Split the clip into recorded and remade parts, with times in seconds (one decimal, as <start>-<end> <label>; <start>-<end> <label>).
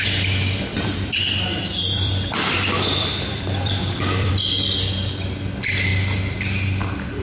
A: 0.0-0.7 recorded; 0.7-4.3 remade; 4.3-7.2 recorded